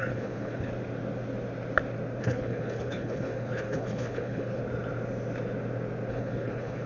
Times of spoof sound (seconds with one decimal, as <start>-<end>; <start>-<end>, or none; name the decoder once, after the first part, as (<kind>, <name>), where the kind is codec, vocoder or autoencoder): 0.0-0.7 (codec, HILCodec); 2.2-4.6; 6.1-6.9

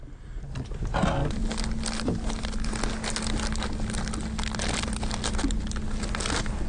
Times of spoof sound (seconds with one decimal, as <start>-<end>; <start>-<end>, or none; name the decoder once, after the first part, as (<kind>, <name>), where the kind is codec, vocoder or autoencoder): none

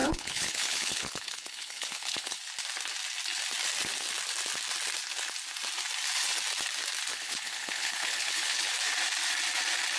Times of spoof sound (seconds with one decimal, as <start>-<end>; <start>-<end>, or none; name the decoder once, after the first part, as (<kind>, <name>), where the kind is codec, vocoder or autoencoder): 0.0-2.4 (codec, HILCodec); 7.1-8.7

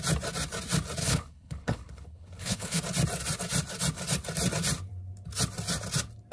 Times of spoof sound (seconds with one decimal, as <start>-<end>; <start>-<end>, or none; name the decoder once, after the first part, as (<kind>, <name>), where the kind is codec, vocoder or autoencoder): 1.0-2.8 (codec, HILCodec)

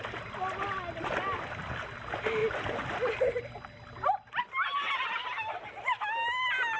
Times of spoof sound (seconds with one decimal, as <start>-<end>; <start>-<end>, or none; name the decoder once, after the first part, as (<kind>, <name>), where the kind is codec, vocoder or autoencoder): none

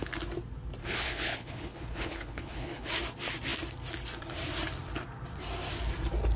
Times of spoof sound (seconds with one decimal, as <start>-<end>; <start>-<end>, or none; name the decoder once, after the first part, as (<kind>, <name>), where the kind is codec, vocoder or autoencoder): 0.8-2.9 (codec, HILCodec)